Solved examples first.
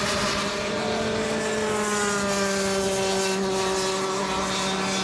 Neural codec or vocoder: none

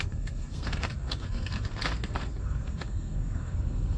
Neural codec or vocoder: codec, SNAC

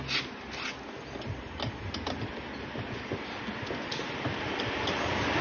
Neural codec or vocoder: none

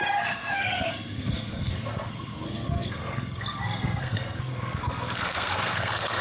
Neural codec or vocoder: codec, SNAC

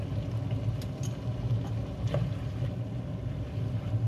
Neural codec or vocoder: none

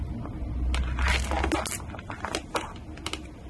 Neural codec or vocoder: none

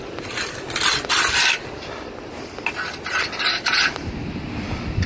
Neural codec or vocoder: none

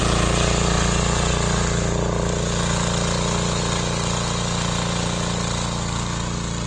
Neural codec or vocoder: none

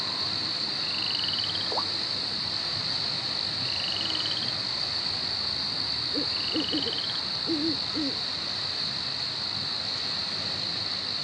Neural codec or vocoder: none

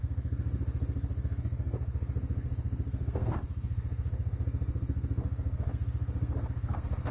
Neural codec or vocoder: codec, SNAC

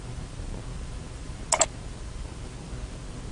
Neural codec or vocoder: none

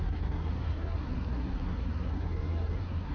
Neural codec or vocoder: codec, SNAC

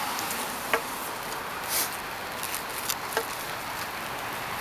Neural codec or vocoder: none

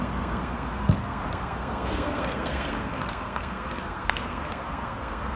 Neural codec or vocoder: codec, SNAC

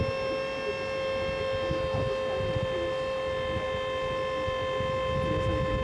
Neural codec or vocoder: none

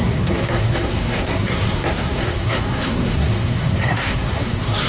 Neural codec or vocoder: codec, SNAC